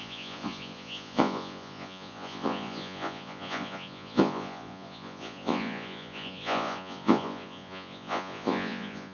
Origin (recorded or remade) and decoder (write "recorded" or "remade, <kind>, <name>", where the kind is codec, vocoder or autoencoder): remade, vocoder, Vocos